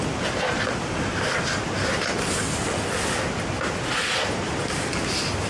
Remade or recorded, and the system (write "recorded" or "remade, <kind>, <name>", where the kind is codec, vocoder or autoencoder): recorded